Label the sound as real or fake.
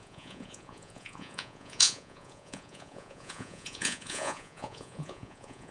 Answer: fake